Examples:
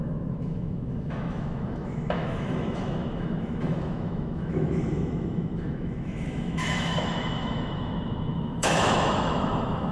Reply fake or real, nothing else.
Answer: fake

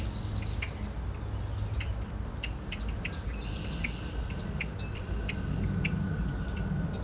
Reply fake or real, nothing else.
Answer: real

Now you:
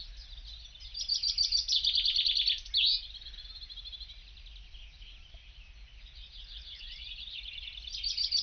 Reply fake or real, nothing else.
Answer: real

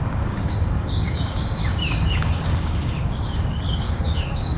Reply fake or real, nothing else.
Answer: fake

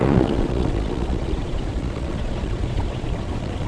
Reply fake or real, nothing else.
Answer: fake